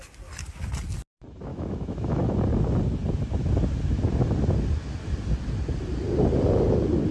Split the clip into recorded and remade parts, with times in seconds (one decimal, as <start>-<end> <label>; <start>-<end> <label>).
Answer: 0.0-1.5 recorded; 1.5-2.3 remade; 2.3-7.1 recorded